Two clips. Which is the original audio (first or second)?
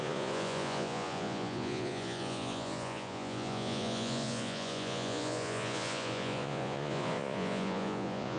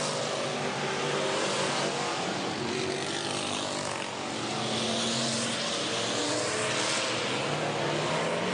second